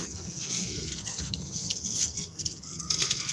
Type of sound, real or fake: fake